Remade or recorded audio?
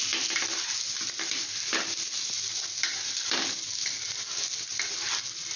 recorded